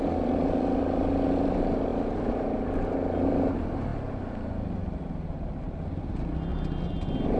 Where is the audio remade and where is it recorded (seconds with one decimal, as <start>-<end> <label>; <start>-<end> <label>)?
0.0-7.4 recorded